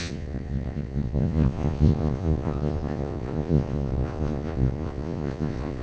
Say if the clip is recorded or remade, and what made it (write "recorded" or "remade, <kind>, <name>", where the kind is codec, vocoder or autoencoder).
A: remade, vocoder, Vocos